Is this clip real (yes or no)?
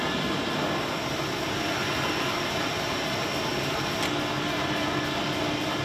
yes